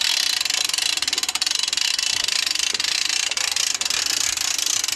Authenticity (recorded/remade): recorded